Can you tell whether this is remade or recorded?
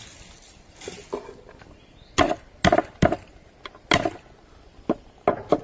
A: recorded